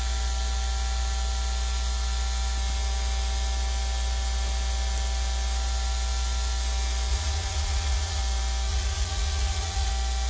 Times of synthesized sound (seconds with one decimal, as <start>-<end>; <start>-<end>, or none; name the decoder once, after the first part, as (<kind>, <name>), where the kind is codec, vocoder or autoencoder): 7.1-8.2 (vocoder, Vocos); 8.7-9.9